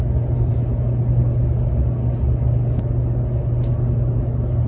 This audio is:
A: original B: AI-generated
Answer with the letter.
A